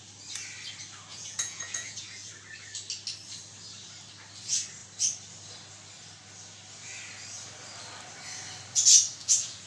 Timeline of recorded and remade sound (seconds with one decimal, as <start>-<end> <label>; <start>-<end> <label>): 0.0-1.1 recorded; 1.1-2.3 remade; 2.3-9.2 recorded; 9.2-9.7 remade